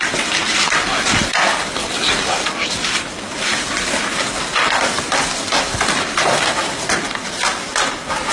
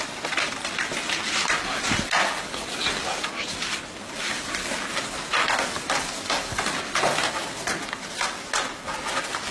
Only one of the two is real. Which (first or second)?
second